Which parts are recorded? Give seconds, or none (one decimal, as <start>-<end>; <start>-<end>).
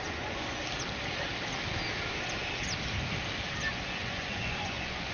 0.6-3.7